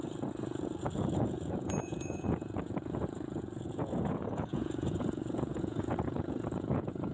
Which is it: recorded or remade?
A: remade